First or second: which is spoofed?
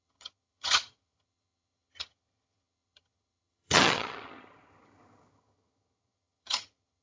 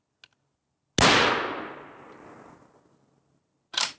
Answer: first